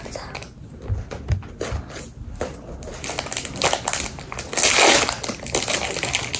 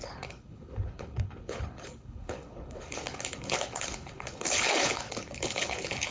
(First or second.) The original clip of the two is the first